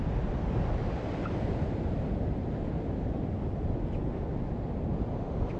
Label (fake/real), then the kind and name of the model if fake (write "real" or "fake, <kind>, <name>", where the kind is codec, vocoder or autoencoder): real